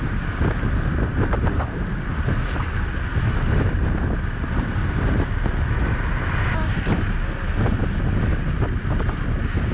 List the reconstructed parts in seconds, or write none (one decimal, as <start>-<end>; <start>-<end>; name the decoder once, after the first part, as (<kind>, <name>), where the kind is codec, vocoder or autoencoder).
none